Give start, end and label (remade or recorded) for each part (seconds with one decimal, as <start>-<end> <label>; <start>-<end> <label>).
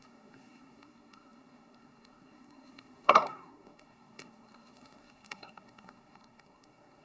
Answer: 0.0-7.0 remade